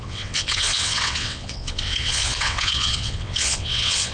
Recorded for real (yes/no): no